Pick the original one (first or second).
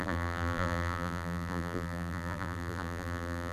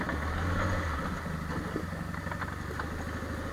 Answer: second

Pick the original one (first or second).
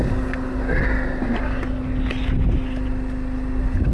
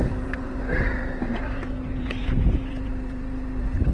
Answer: first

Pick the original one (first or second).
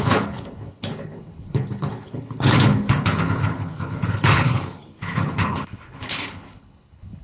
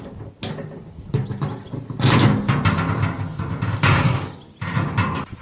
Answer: second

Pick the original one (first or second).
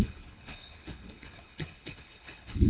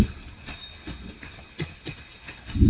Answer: second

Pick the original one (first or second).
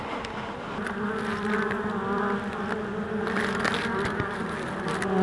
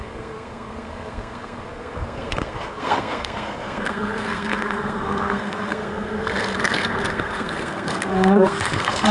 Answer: first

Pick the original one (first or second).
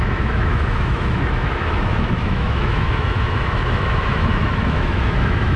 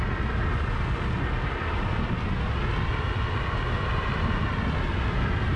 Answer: second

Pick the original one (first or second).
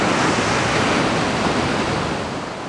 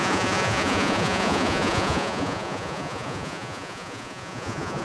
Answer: first